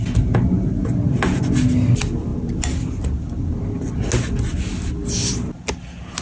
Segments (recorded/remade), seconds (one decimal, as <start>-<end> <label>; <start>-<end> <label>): 0.0-0.8 recorded; 0.8-1.4 remade; 1.4-6.2 recorded